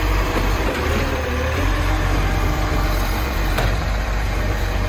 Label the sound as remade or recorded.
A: remade